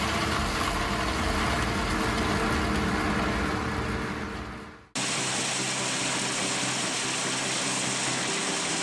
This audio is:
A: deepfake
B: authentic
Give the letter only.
B